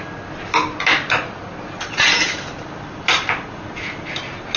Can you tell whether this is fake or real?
real